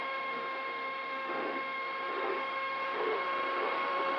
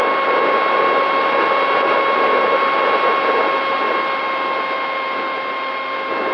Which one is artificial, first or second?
first